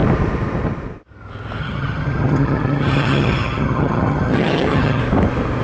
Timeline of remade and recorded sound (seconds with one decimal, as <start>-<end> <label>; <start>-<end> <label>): 0.0-1.6 recorded; 1.6-5.0 remade; 5.0-5.6 recorded